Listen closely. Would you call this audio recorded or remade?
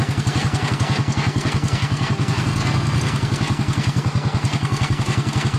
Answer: remade